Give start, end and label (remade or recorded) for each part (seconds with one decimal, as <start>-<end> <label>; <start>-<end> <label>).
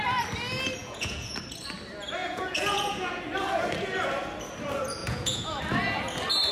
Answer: 0.0-0.8 recorded; 0.8-1.4 remade; 1.4-2.2 recorded; 2.2-3.2 remade; 3.2-5.0 recorded; 5.0-5.6 remade; 5.6-6.5 recorded